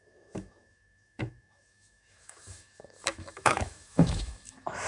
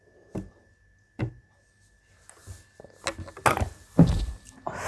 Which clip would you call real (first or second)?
second